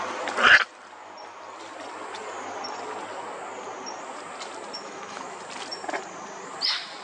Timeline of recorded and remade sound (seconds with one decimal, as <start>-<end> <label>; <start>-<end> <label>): 0.0-4.8 recorded; 4.8-5.4 remade; 5.4-7.0 recorded